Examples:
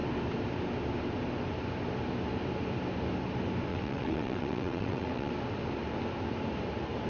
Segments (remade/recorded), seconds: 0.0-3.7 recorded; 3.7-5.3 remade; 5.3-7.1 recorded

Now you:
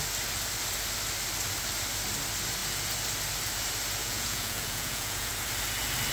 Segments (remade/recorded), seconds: 0.0-4.0 recorded; 4.0-5.3 remade; 5.3-6.1 recorded